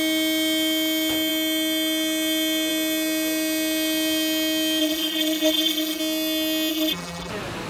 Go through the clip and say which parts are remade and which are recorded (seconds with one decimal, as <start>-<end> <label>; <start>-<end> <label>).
0.0-4.8 recorded; 4.8-6.0 remade; 6.0-6.7 recorded; 6.7-7.3 remade; 7.3-7.7 recorded